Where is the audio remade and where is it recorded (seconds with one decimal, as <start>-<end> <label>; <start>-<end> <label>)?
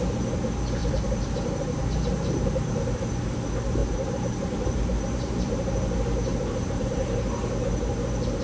0.0-0.8 recorded; 0.8-2.7 remade; 2.7-3.8 recorded; 3.8-5.5 remade; 5.5-6.3 recorded; 6.3-7.2 remade; 7.2-8.4 recorded